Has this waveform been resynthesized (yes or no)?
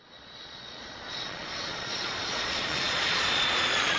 yes